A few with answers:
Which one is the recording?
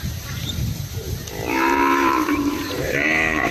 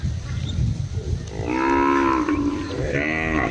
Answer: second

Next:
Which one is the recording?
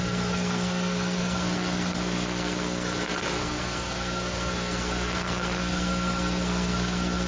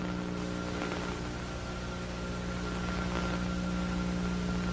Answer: second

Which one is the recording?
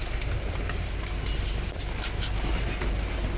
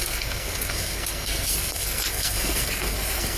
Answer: first